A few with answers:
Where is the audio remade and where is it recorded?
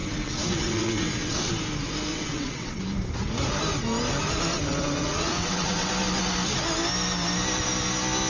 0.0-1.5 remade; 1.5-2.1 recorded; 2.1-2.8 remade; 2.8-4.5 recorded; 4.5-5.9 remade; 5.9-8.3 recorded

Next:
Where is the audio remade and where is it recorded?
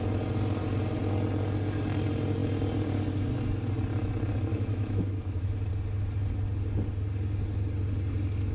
0.0-4.5 recorded; 4.5-5.7 remade; 5.7-8.5 recorded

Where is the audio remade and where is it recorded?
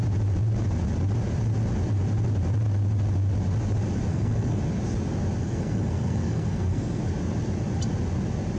0.0-4.1 recorded; 4.1-4.6 remade; 4.6-5.4 recorded; 5.4-7.0 remade; 7.0-8.6 recorded